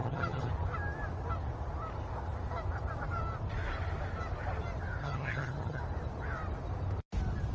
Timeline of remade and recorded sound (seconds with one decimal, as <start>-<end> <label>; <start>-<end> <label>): 0.0-0.5 remade; 0.5-5.0 recorded; 5.0-5.8 remade; 5.8-7.5 recorded

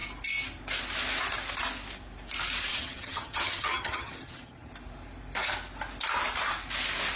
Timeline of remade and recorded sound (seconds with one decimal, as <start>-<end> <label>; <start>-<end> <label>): 0.0-2.7 recorded; 2.7-4.7 remade; 4.7-7.2 recorded

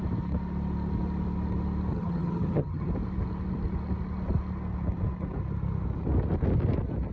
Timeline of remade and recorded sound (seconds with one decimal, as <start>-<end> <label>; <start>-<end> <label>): 0.0-1.9 recorded; 1.9-2.9 remade; 2.9-7.1 recorded